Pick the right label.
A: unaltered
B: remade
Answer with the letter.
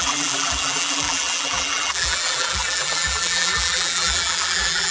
B